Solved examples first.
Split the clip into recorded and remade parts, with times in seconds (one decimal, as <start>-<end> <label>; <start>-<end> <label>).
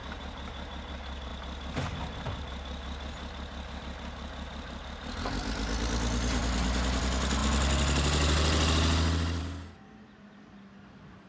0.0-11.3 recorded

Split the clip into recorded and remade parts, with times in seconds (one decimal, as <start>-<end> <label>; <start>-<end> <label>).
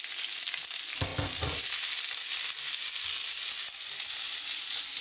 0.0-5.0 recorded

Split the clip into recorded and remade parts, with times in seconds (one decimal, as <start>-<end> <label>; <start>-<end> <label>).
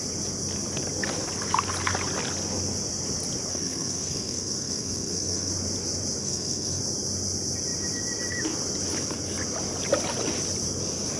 0.0-3.5 recorded; 3.5-5.5 remade; 5.5-6.2 recorded; 6.2-6.8 remade; 6.8-11.2 recorded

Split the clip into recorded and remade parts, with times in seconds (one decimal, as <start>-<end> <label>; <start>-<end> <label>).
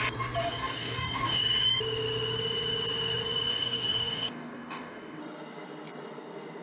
0.0-0.6 recorded; 0.6-1.4 remade; 1.4-3.5 recorded; 3.5-5.2 remade; 5.2-6.6 recorded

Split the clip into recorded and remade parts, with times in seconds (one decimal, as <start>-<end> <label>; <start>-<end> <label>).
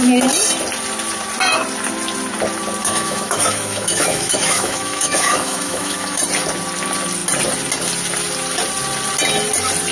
0.0-2.8 recorded; 2.8-6.2 remade; 6.2-9.9 recorded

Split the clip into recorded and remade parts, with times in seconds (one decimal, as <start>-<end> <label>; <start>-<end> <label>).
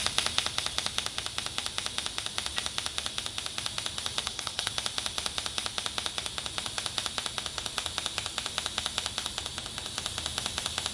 0.0-4.2 recorded; 4.2-4.7 remade; 4.7-10.9 recorded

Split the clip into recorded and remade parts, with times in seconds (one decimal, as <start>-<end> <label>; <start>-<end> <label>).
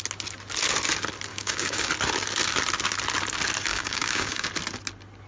0.0-1.3 recorded; 1.3-1.9 remade; 1.9-3.7 recorded; 3.7-4.5 remade; 4.5-5.3 recorded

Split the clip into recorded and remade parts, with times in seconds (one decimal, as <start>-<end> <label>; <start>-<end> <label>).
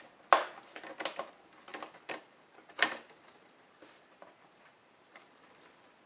0.0-1.7 recorded; 1.7-5.4 remade; 5.4-6.1 recorded